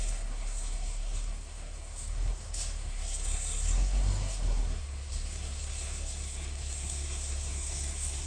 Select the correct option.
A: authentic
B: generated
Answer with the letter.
B